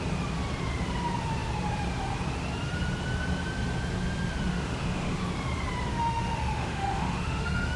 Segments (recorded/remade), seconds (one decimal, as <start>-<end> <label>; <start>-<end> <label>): 0.0-4.5 recorded; 4.5-5.2 remade; 5.2-5.9 recorded; 5.9-7.8 remade